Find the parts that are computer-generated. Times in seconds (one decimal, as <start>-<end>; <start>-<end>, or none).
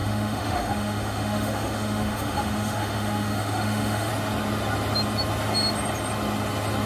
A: 0.0-4.1